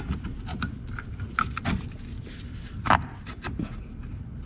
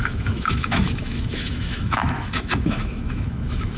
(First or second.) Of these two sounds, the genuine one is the first